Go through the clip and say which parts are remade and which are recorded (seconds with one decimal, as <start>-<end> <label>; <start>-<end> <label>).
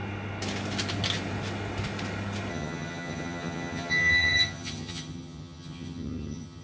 0.0-2.5 recorded; 2.5-6.6 remade